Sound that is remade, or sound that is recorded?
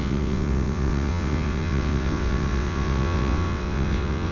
remade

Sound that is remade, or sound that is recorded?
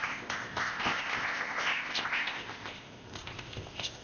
remade